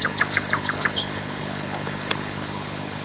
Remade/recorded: remade